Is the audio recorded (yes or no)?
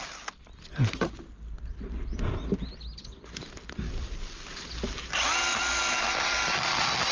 yes